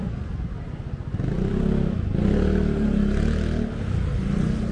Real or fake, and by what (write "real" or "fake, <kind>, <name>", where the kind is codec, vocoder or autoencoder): real